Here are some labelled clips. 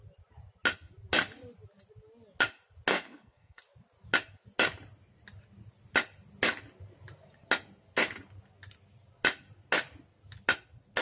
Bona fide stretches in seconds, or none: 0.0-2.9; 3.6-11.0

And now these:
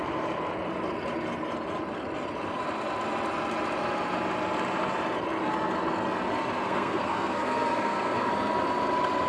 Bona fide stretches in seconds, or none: 0.0-6.6; 8.3-9.3

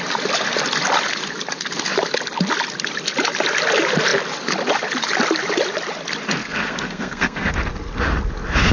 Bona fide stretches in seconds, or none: 0.0-6.4; 7.5-8.7

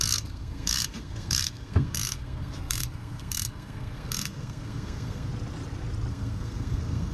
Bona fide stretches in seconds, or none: 5.3-6.1

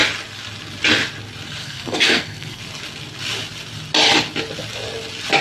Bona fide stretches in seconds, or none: 0.0-1.6; 2.6-5.4

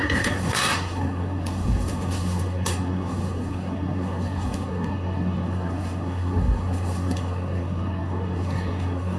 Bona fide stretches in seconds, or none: none